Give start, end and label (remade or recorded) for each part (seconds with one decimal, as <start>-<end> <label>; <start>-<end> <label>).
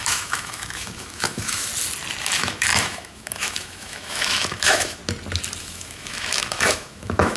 0.0-1.7 remade; 1.7-2.2 recorded; 2.2-5.0 remade; 5.0-5.6 recorded; 5.6-7.4 remade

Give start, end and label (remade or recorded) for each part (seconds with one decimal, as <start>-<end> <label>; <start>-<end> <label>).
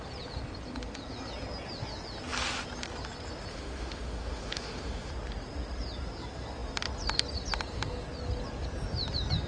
0.0-3.5 recorded; 3.5-5.1 remade; 5.1-9.5 recorded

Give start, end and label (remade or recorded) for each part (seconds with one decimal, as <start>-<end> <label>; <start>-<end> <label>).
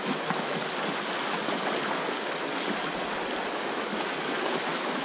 0.0-0.6 remade; 0.6-3.5 recorded; 3.5-5.0 remade